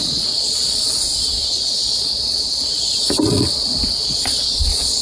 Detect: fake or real fake